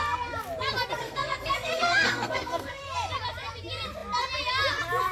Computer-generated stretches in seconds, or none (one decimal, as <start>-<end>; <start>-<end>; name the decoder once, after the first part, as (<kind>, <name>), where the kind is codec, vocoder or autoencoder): 1.0-2.8 (codec, SNAC)